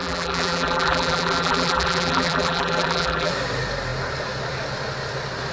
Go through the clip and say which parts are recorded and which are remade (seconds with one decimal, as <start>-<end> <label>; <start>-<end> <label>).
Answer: 0.0-3.3 remade; 3.3-5.5 recorded